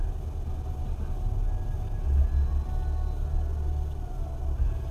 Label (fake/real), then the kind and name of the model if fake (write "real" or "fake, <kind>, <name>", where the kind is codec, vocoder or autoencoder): real